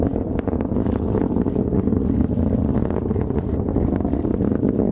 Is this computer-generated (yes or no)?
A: no